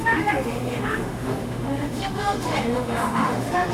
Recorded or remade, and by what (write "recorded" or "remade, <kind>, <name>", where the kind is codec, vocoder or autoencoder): remade, autoencoder, DAC-VAE